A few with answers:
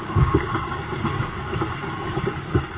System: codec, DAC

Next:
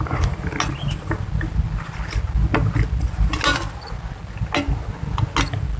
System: none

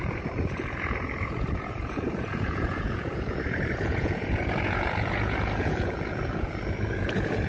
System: vocoder, Vocos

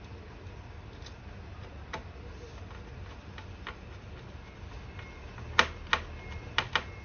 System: none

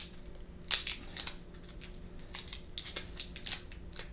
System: none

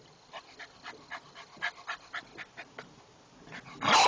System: none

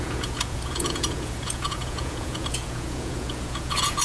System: vocoder, Vocos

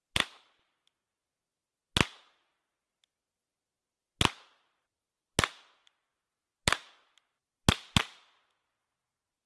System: none